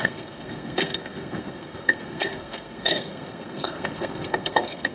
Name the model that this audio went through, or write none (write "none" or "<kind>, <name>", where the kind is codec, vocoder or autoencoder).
codec, SNAC